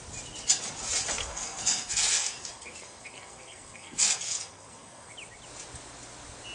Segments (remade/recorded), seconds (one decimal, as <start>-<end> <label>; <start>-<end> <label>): 0.0-1.2 recorded; 1.2-5.1 remade; 5.1-6.5 recorded

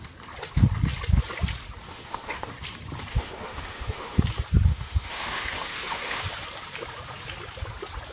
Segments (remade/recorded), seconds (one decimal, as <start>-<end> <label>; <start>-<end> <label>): 0.0-1.9 recorded; 1.9-2.5 remade; 2.5-3.1 recorded; 3.1-4.2 remade; 4.2-4.7 recorded; 4.7-6.2 remade; 6.2-8.1 recorded

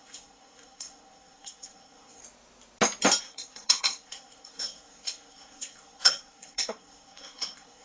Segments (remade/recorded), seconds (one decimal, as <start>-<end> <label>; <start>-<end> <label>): 0.0-2.2 remade; 2.2-3.2 recorded; 3.2-7.8 remade

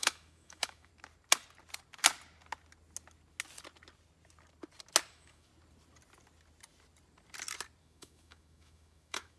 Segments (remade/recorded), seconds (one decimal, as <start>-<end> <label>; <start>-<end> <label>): 0.0-0.9 remade; 0.9-5.1 recorded; 5.1-5.5 remade; 5.5-7.8 recorded; 7.8-9.4 remade

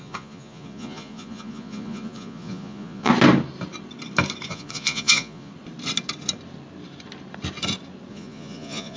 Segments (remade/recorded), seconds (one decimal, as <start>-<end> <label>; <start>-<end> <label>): 0.0-3.1 remade; 3.1-4.5 recorded; 4.5-5.5 remade; 5.5-8.1 recorded; 8.1-9.0 remade

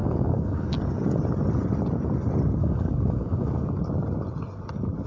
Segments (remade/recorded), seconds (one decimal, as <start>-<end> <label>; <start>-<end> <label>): 0.0-0.8 remade; 0.8-2.6 recorded; 2.6-3.8 remade; 3.8-5.1 recorded

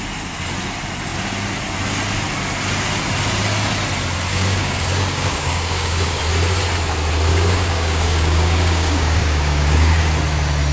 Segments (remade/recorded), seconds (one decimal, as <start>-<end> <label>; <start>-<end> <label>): 0.0-4.3 recorded; 4.3-6.2 remade; 6.2-7.3 recorded; 7.3-10.1 remade; 10.1-10.7 recorded

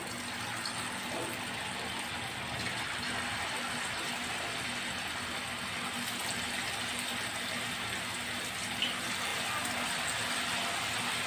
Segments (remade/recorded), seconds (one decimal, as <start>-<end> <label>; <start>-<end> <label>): 0.0-11.3 recorded